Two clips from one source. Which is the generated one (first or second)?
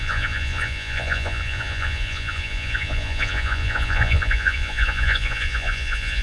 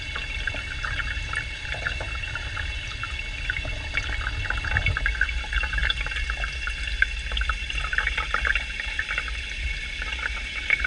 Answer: first